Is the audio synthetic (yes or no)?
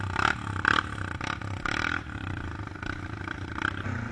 no